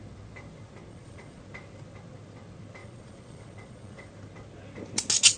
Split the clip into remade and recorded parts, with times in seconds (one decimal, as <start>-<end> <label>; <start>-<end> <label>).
0.0-0.9 recorded; 0.9-1.4 remade; 1.4-2.8 recorded; 2.8-4.1 remade; 4.1-5.4 recorded